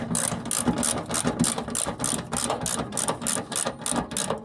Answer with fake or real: real